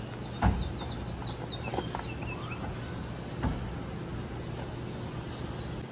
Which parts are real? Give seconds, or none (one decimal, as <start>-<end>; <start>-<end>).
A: 0.0-5.9